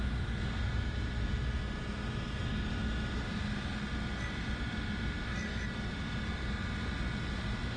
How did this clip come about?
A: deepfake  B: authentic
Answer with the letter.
B